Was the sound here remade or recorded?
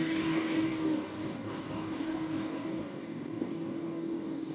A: remade